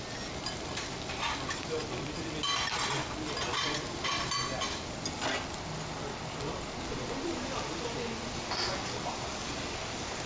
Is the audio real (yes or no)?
yes